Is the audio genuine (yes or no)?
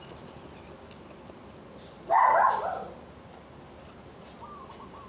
yes